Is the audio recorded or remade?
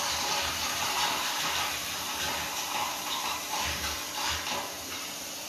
remade